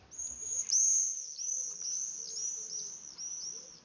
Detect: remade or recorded recorded